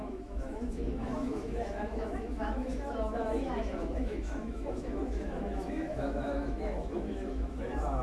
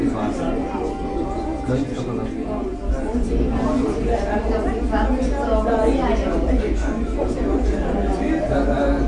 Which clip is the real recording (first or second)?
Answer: second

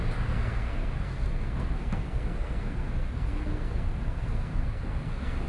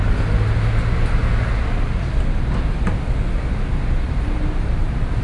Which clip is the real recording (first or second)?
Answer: second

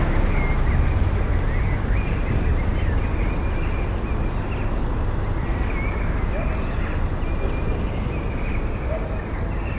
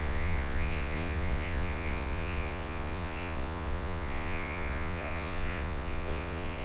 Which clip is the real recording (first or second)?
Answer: first